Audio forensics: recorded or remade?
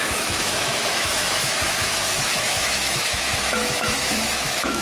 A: remade